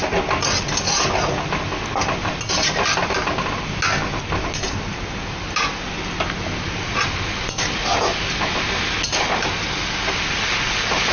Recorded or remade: recorded